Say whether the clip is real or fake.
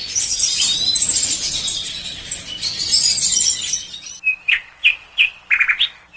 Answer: real